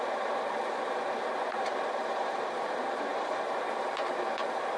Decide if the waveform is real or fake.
fake